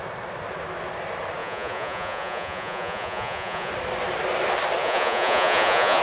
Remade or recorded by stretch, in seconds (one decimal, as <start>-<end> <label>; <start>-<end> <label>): 0.0-1.4 recorded; 1.4-3.7 remade; 3.7-4.8 recorded; 4.8-6.0 remade